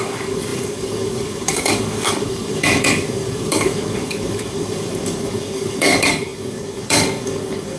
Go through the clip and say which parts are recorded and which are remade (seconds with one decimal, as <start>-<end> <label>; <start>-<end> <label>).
0.0-7.8 remade

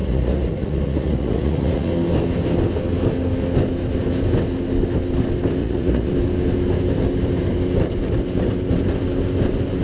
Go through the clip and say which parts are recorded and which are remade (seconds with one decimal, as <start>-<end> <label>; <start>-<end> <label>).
0.0-1.9 remade; 1.9-5.6 recorded; 5.6-6.1 remade; 6.1-9.8 recorded

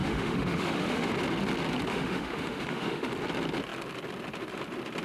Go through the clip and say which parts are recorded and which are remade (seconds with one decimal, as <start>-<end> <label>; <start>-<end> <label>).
0.0-1.1 remade; 1.1-1.9 recorded; 1.9-3.1 remade; 3.1-5.0 recorded

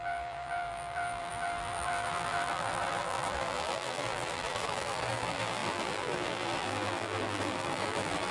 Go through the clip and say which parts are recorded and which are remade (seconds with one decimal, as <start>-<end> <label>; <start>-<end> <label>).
0.0-8.3 remade

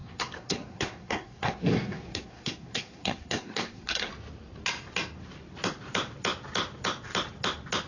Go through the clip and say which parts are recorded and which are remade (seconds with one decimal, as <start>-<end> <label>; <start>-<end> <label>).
0.0-4.1 remade; 4.1-7.9 recorded

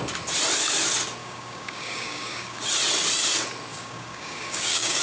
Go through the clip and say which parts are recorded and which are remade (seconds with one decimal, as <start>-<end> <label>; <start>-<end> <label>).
0.0-1.2 recorded; 1.2-2.6 remade; 2.6-3.7 recorded; 3.7-5.0 remade

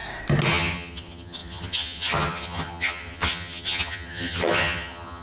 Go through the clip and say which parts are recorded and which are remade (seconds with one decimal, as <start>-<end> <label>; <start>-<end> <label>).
0.0-0.5 recorded; 0.5-5.2 remade

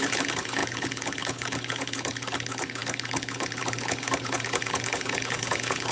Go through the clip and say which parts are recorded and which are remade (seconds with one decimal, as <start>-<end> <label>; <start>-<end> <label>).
0.0-5.9 remade